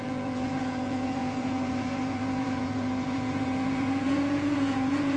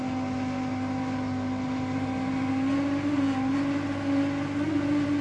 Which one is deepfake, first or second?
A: first